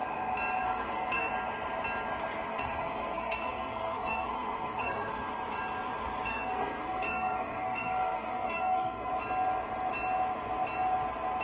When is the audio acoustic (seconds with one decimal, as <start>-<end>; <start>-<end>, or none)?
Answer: 0.0-0.6; 1.3-2.5; 5.2-6.3; 9.1-11.4